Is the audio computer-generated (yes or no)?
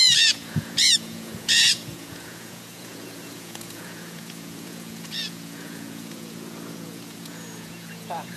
yes